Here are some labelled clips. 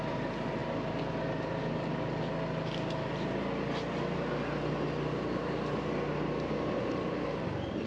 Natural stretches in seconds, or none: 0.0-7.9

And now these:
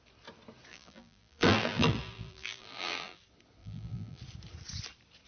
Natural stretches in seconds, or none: 0.0-0.7; 3.2-3.6; 4.2-5.3

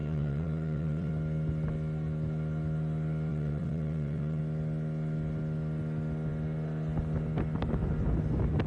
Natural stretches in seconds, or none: 1.1-3.3; 4.4-8.7

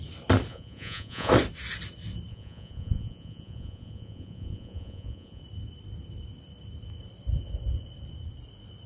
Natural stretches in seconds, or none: 0.0-0.5; 1.3-2.3; 5.4-8.9

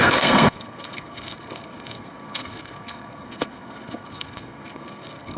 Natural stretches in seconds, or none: none